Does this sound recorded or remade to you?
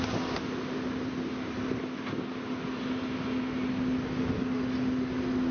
recorded